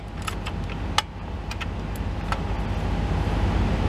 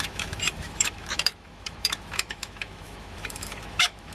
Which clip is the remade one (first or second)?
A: second